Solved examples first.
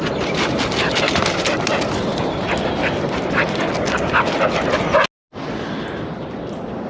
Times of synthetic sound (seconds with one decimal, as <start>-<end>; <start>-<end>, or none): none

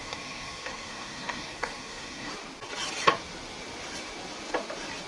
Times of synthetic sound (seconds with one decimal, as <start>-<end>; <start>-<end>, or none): 0.0-2.3

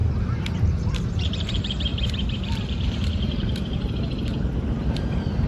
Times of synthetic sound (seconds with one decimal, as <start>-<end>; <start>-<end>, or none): 0.0-5.5

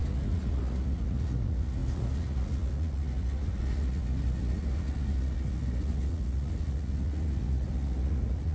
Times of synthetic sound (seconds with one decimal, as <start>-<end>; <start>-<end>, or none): 0.0-8.5

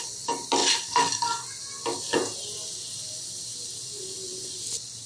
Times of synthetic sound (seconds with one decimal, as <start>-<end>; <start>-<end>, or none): none